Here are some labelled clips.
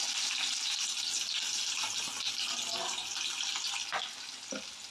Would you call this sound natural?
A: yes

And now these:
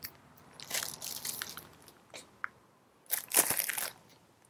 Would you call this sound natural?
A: yes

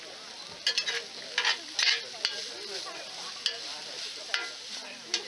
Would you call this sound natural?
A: yes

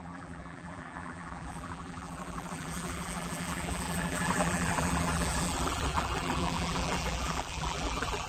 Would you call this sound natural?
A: no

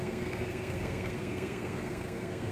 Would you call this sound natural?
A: no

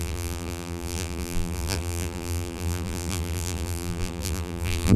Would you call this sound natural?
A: no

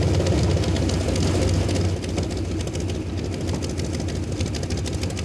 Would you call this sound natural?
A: yes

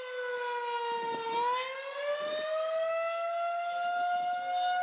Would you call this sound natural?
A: yes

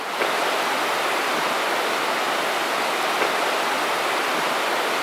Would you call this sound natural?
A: yes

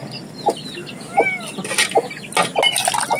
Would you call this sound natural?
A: yes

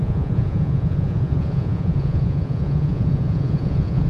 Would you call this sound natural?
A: no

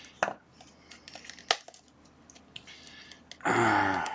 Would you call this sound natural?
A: yes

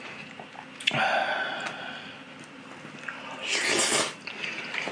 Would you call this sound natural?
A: yes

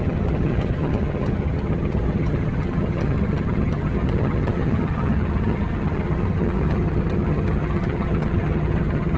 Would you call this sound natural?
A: no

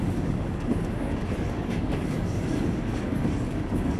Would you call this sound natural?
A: no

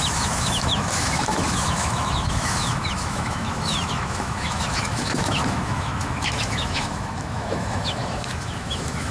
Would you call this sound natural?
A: no